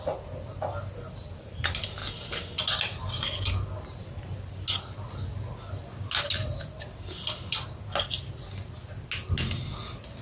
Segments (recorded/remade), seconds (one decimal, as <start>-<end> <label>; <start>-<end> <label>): 0.0-10.2 recorded

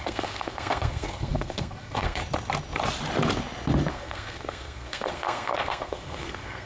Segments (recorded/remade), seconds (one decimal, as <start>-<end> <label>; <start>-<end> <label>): 0.0-2.2 remade; 2.2-3.9 recorded; 3.9-6.7 remade

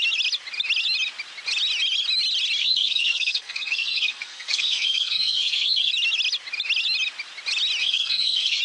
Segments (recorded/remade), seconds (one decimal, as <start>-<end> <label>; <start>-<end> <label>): 0.0-2.6 recorded; 2.6-5.9 remade; 5.9-7.8 recorded; 7.8-8.6 remade

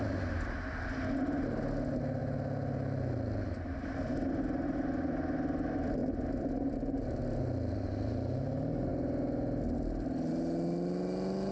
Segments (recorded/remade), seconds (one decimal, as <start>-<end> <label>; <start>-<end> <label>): 0.0-11.5 recorded

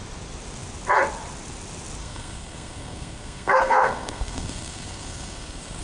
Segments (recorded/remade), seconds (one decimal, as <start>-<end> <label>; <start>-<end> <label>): 0.0-2.0 recorded; 2.0-5.8 remade

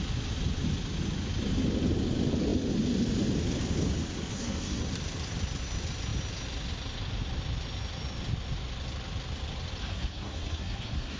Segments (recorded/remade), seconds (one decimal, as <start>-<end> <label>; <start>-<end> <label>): 0.0-4.3 recorded; 4.3-4.8 remade; 4.8-9.8 recorded; 9.8-11.2 remade

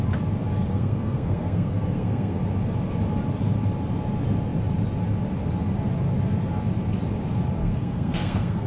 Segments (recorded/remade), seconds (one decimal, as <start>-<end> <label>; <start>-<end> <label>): 0.0-0.7 recorded; 0.7-2.4 remade; 2.4-7.6 recorded; 7.6-8.7 remade